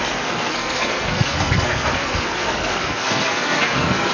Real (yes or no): no